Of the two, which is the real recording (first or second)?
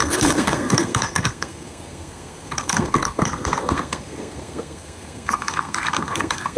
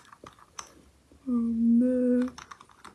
second